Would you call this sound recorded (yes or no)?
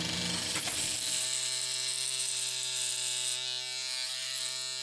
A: yes